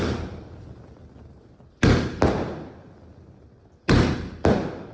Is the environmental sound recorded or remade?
recorded